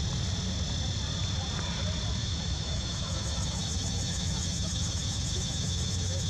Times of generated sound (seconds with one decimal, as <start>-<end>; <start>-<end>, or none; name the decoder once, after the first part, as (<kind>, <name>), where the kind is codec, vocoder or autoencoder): 2.2-6.3 (autoencoder, DAC-VAE)